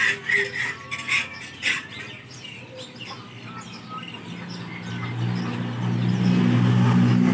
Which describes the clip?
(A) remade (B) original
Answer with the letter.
B